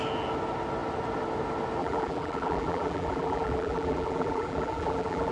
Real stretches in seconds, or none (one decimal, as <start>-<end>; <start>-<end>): 0.0-1.8